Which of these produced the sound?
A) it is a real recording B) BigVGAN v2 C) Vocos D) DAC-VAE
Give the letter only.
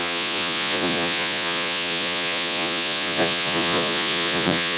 C